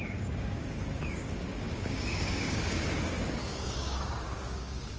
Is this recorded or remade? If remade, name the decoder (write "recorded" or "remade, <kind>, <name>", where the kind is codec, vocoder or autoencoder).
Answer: remade, codec, DAC